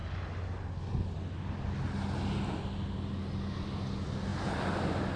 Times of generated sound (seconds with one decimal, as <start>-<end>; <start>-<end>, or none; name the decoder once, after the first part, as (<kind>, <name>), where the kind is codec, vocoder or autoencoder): none